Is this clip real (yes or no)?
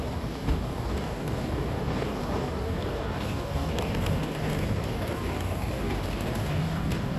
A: no